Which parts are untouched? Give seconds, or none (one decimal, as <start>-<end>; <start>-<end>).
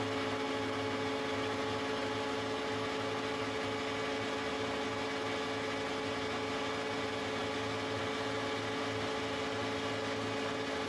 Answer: 0.0-10.9